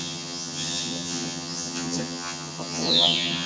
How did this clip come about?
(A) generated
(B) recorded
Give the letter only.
A